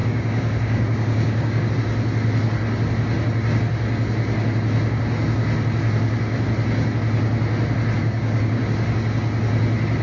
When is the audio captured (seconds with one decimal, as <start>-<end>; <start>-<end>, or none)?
1.7-8.0; 8.6-10.0